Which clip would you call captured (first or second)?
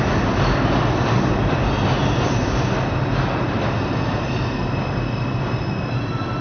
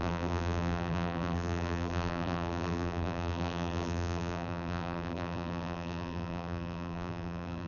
first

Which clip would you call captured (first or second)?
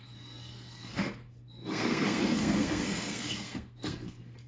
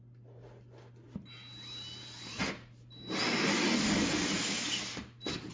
second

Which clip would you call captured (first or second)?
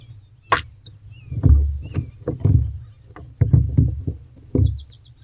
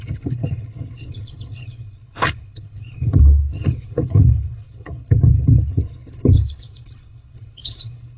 first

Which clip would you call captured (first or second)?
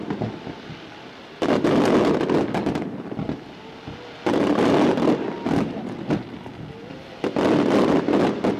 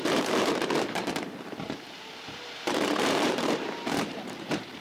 first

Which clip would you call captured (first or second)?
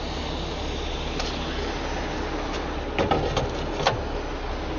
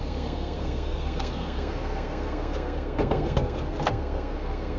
first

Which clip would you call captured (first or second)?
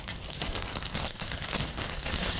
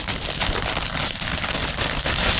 second